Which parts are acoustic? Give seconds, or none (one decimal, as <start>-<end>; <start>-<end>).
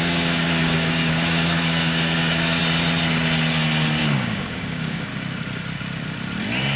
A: 2.6-4.0; 5.1-6.8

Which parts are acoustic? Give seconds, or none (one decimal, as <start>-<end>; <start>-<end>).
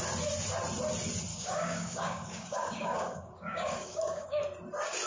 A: 0.0-1.3; 4.4-5.1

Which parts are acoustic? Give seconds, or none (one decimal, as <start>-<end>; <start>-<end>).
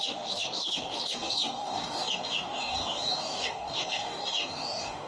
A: none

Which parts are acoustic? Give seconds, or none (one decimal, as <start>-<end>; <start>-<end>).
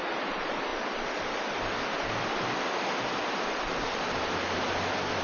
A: 0.0-5.2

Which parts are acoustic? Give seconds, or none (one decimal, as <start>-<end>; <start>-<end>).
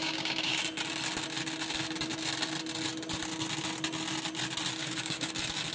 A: 0.6-4.8; 5.3-5.7